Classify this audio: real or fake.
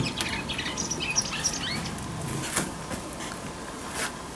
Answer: real